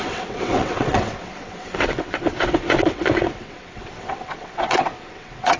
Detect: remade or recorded remade